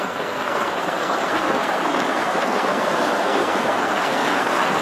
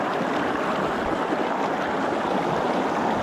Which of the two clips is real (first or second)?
second